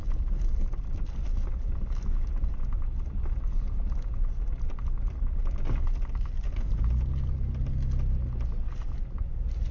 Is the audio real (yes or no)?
yes